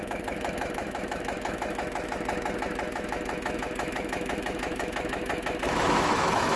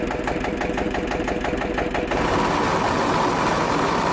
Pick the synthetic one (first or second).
first